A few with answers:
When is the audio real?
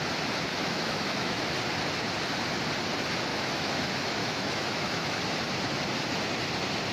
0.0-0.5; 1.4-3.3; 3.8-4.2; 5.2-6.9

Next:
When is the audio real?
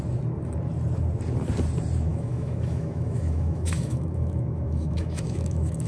0.0-2.1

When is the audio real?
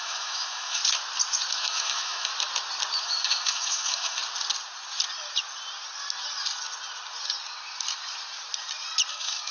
0.8-1.5; 2.3-3.0; 4.2-9.1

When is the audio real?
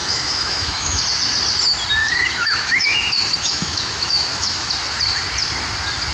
1.0-2.0; 4.7-6.1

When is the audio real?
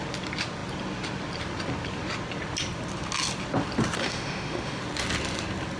0.0-4.0; 4.8-5.8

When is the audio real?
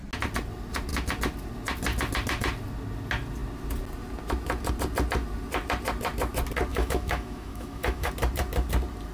0.0-6.7; 8.1-9.1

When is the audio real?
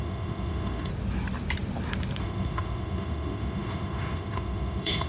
0.9-2.2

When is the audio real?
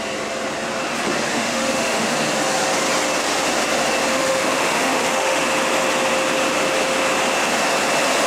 0.0-1.3; 2.1-4.1; 5.4-8.3